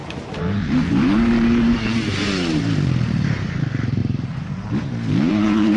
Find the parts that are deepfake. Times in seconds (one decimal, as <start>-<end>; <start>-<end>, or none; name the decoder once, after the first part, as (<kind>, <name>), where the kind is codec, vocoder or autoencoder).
0.0-5.8 (vocoder, BigVGAN v2)